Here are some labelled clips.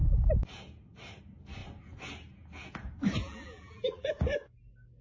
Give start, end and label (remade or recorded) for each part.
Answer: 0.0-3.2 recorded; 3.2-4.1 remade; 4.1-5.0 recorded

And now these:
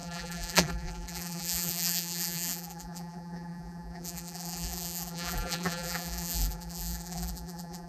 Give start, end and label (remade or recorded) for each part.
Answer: 0.0-7.9 remade

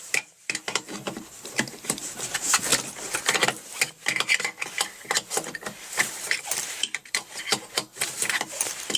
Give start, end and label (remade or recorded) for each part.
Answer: 0.0-2.7 remade; 2.7-5.9 recorded; 5.9-9.0 remade

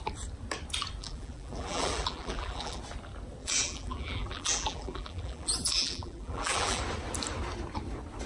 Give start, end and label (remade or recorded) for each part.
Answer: 0.0-1.0 recorded; 1.0-2.8 remade; 2.8-3.4 recorded; 3.4-6.8 remade; 6.8-8.3 recorded